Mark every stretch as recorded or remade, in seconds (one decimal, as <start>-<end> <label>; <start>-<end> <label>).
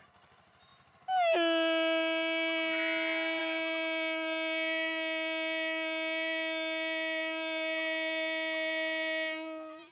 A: 0.0-9.9 recorded